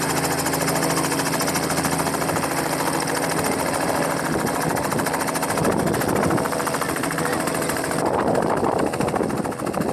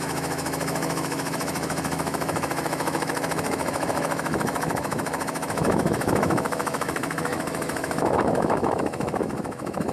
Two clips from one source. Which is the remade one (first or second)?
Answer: second